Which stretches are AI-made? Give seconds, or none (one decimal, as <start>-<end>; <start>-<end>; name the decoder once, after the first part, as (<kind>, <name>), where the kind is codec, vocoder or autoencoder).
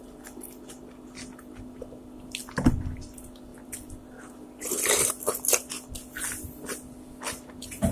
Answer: none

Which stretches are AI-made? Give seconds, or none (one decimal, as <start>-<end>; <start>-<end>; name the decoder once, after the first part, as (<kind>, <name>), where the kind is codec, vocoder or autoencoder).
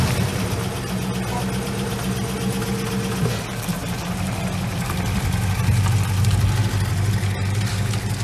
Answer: none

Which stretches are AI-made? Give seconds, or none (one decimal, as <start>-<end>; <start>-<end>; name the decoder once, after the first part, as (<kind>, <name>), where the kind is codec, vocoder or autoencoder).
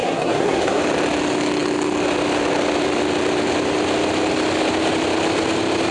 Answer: 0.0-0.8 (codec, SNAC)